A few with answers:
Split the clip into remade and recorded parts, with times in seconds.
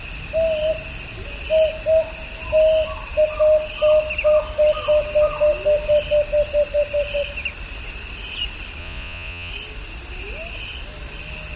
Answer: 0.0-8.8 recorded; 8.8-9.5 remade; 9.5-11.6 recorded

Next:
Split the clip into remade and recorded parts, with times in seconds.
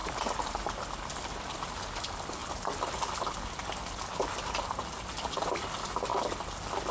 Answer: 0.0-6.9 recorded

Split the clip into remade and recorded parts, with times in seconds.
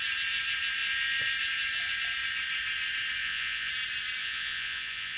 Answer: 0.0-3.2 recorded; 3.2-3.7 remade; 3.7-4.2 recorded; 4.2-5.2 remade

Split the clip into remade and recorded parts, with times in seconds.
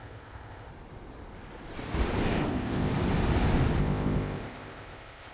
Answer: 0.0-0.7 remade; 0.7-2.5 recorded; 2.5-2.9 remade; 2.9-3.8 recorded; 3.8-5.3 remade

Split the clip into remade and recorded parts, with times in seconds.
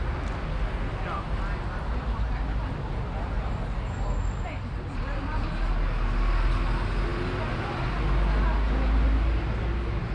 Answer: 0.0-10.1 recorded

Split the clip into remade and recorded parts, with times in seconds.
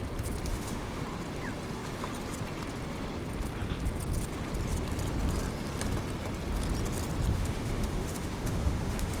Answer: 0.0-0.5 recorded; 0.5-1.0 remade; 1.0-7.3 recorded; 7.3-9.2 remade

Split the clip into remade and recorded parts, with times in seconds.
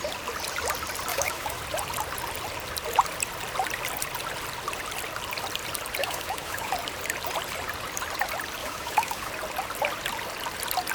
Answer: 0.0-1.1 recorded; 1.1-1.6 remade; 1.6-6.0 recorded; 6.0-6.7 remade; 6.7-8.6 recorded; 8.6-9.3 remade; 9.3-10.9 recorded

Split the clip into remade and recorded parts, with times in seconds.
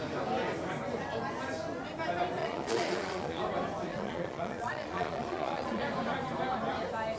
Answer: 0.0-2.4 recorded; 2.4-3.4 remade; 3.4-3.9 recorded; 3.9-5.8 remade; 5.8-7.2 recorded